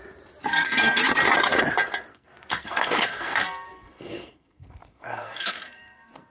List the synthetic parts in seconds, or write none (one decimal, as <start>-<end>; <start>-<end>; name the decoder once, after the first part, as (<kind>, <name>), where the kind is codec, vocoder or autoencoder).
0.5-1.0 (codec, SNAC); 2.1-6.3